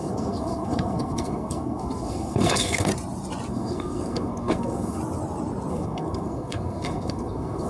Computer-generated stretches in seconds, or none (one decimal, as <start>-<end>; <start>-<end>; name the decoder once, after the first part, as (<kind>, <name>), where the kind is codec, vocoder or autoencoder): 0.0-2.9 (codec, SNAC); 3.5-5.0; 5.7-7.7